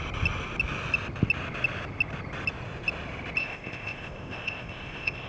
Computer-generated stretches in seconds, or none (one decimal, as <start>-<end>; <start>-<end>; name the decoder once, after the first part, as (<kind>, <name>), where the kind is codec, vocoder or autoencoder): 3.4-5.3 (codec, ZipCodec)